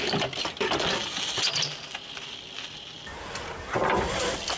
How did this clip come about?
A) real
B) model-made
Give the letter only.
A